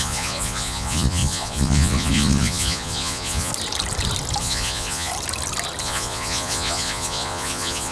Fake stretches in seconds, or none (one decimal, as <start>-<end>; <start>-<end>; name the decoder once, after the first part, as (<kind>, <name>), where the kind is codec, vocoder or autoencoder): 0.0-3.5 (vocoder, Vocos); 4.4-5.1; 5.8-7.9